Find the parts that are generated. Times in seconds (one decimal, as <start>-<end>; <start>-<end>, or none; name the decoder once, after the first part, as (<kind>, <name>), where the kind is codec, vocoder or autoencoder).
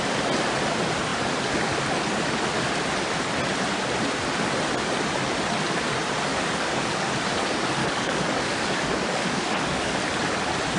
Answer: 6.3-7.1 (codec, DAC); 7.8-10.0